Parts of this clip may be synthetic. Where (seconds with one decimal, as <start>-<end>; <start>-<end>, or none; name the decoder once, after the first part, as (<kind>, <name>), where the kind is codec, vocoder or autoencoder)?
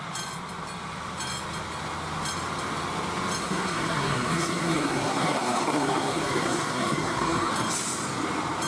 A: 3.4-7.5 (codec, SNAC)